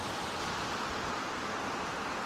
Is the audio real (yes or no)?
yes